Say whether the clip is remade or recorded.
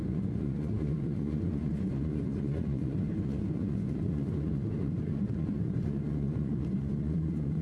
remade